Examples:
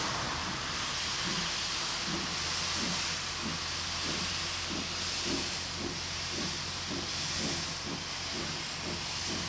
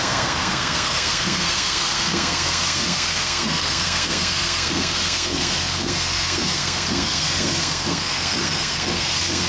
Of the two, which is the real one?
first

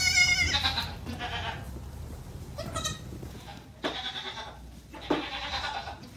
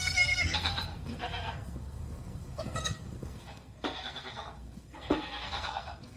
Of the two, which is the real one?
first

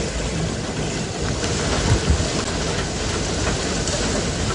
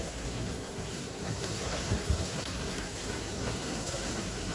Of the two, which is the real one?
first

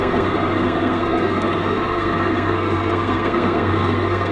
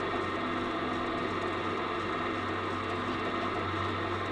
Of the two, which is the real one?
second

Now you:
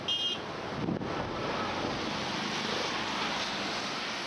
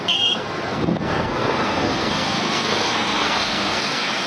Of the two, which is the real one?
first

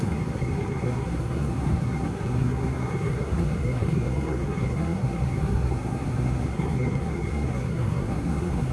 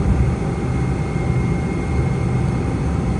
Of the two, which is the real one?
second